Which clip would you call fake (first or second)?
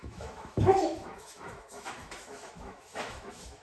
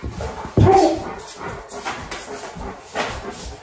first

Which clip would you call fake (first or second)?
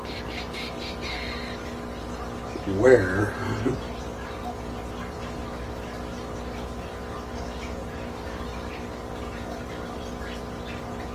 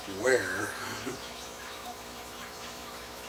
second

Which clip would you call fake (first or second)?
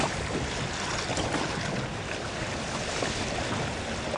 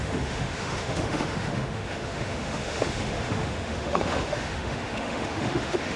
second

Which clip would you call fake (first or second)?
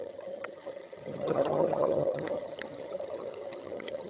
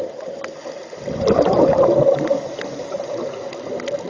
first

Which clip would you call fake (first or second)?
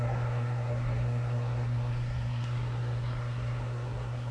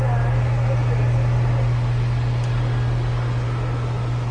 first